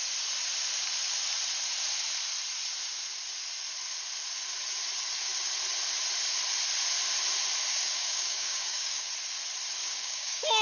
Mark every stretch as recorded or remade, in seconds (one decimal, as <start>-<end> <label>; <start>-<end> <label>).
0.0-7.9 recorded; 7.9-9.1 remade; 9.1-9.8 recorded; 9.8-10.6 remade